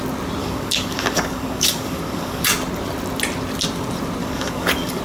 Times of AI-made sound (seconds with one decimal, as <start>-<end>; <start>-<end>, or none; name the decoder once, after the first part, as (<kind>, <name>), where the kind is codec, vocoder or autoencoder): 0.4-2.4 (codec, DAC); 4.2-5.0